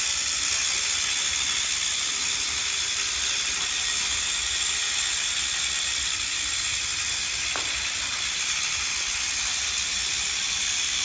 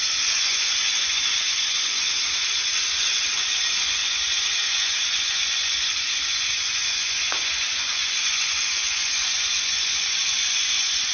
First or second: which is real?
first